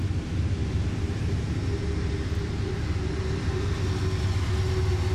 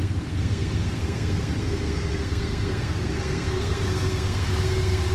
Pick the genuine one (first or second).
first